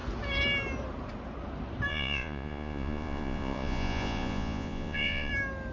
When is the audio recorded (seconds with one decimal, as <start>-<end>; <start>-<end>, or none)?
0.0-1.9; 5.3-5.7

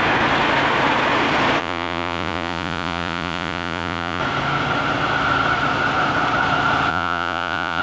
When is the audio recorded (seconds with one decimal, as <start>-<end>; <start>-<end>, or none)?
0.0-1.6; 4.2-6.9

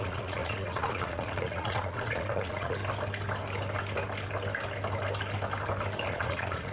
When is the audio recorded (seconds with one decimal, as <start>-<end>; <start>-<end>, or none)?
2.8-6.1